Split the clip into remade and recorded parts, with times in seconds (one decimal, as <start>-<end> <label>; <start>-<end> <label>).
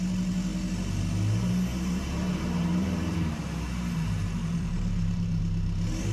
0.0-1.7 recorded; 1.7-5.4 remade; 5.4-6.1 recorded